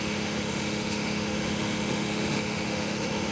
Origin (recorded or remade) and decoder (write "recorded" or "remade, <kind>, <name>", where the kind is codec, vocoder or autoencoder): remade, autoencoder, DAC-VAE